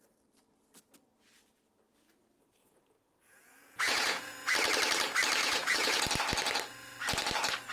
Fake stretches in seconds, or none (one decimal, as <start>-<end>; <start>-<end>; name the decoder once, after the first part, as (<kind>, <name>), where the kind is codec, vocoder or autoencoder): 2.6-4.3 (vocoder, Vocos); 5.4-6.0